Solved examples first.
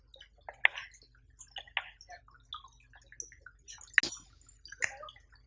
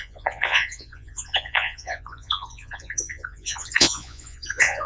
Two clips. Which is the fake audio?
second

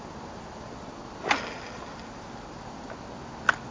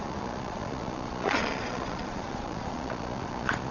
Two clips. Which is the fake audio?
second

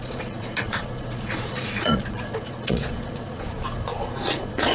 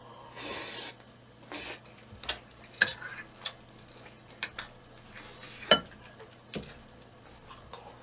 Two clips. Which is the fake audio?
first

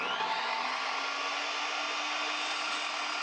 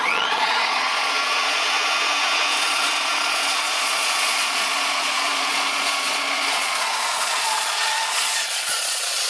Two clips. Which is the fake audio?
second